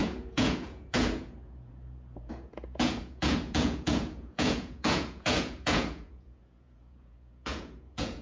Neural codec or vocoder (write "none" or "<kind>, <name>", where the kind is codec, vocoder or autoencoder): vocoder, Vocos